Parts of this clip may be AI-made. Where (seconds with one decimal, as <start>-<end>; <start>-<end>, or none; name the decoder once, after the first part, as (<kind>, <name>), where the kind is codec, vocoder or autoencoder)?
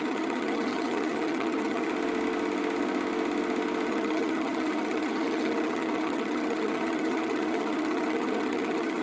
0.0-1.9 (vocoder, HiFi-GAN); 3.9-9.0